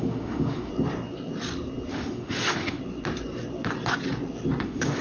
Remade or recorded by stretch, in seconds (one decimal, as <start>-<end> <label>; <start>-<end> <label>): 0.0-0.7 remade; 0.7-1.9 recorded; 1.9-2.8 remade; 2.8-4.6 recorded; 4.6-5.0 remade